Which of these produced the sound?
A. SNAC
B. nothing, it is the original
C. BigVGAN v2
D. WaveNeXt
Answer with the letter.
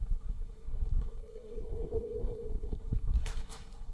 A